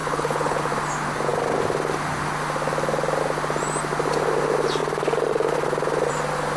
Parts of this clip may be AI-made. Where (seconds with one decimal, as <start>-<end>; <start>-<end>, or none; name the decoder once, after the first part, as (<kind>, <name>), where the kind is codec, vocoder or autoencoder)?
0.0-0.6 (codec, HILCodec)